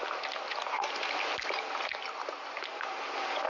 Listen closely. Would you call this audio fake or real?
real